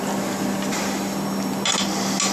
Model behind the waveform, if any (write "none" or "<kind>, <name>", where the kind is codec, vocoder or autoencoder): none